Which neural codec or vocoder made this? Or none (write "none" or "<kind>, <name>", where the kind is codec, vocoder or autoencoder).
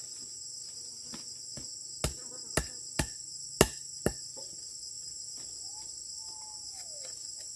none